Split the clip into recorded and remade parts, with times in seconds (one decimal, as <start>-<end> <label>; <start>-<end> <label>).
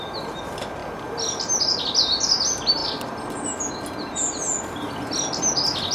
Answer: 0.0-5.9 recorded